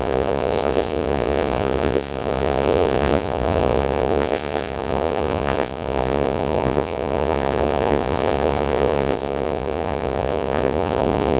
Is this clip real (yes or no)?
no